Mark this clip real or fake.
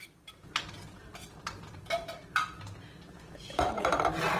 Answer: fake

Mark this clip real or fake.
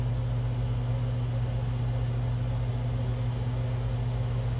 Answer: real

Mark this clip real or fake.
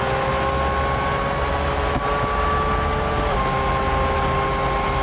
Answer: real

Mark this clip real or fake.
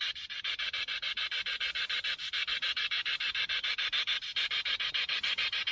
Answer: real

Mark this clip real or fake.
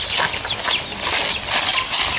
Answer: real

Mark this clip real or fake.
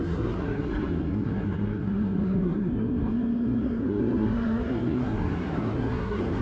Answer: fake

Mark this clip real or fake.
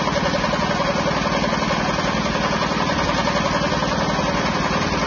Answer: real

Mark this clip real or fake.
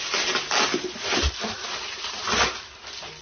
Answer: real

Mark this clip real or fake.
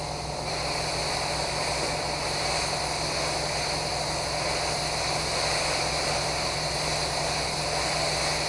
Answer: real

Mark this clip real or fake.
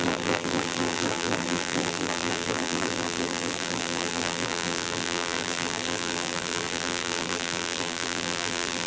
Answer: fake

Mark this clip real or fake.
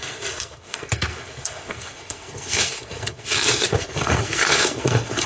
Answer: fake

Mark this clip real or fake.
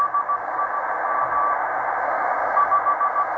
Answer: real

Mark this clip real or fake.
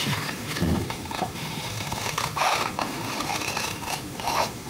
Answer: fake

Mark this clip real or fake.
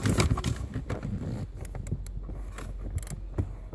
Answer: real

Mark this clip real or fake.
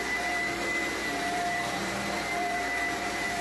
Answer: fake